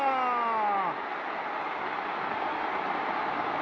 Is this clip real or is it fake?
real